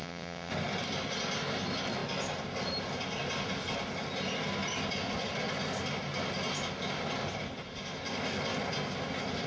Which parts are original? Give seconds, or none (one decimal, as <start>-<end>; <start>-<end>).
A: 0.5-9.5